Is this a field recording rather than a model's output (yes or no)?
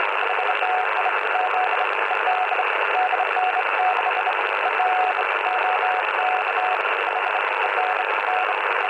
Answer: yes